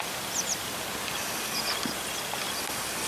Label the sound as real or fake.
real